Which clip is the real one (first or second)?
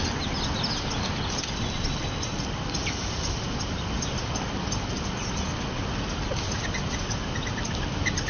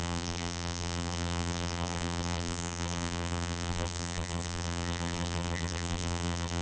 first